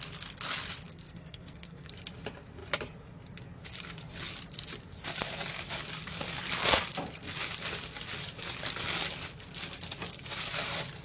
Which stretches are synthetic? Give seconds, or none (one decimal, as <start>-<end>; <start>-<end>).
0.9-1.9